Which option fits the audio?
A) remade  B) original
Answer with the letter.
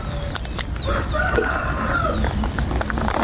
A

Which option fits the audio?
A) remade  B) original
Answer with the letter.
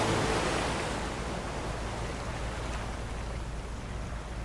B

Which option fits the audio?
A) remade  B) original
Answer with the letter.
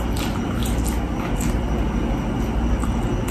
B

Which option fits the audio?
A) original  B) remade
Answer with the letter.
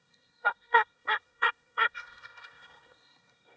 B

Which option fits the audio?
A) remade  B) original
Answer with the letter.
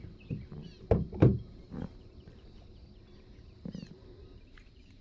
A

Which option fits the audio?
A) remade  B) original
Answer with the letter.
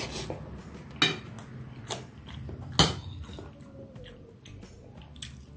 B